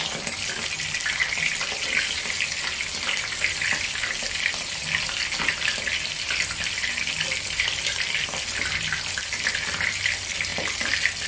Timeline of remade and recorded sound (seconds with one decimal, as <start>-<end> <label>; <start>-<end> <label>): 0.0-11.3 recorded